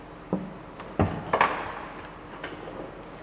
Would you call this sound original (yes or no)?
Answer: yes